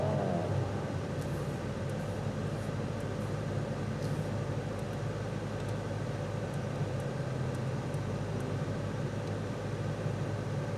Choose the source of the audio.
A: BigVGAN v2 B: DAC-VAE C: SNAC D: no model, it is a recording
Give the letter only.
D